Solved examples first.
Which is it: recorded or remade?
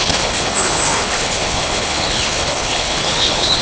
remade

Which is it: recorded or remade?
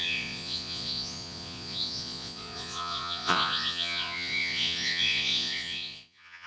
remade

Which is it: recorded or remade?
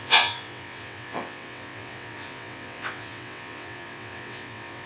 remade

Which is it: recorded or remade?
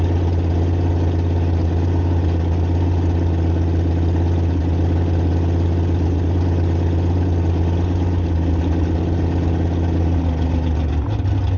recorded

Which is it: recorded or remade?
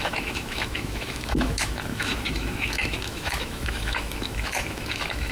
remade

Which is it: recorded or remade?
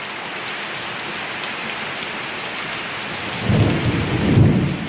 recorded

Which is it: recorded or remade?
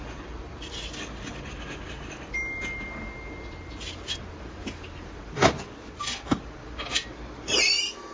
recorded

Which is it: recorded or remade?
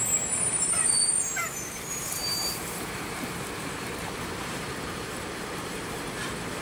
remade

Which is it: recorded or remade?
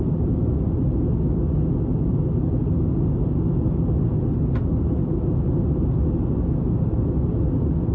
recorded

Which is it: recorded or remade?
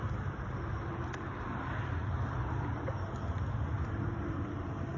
remade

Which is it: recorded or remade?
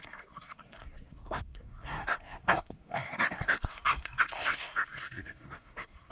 remade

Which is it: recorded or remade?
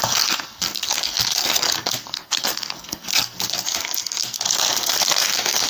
remade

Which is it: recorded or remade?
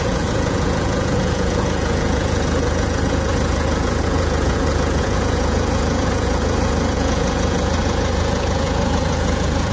remade